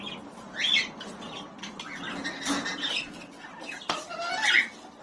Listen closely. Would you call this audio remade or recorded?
recorded